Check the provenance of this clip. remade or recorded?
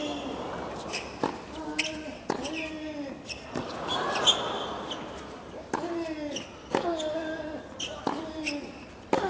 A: recorded